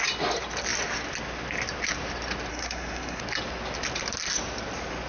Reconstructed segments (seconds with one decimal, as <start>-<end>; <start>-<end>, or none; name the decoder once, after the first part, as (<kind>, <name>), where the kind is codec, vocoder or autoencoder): 2.5-3.2 (codec, SNAC)